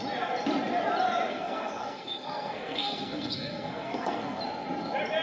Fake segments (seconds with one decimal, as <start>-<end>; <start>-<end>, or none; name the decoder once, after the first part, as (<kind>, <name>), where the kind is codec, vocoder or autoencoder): 1.3-4.4 (codec, SNAC)